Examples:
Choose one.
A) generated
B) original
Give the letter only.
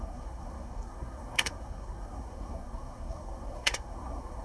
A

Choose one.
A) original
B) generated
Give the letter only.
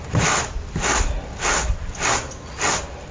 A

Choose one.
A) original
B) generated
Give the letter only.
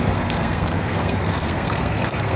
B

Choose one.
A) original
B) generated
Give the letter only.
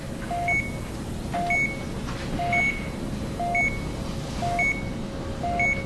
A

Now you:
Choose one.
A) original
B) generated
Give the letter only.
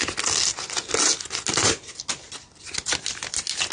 A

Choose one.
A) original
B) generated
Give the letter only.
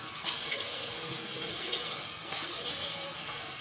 B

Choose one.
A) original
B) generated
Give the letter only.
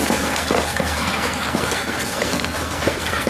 B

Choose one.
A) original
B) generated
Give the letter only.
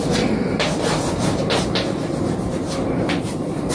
A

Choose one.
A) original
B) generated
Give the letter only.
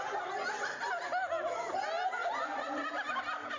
A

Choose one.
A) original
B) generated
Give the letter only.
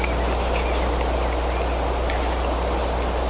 A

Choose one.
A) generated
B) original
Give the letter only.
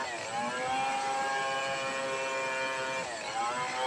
B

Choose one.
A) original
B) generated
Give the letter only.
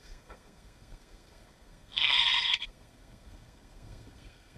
B